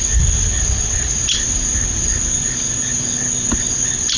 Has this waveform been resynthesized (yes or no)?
no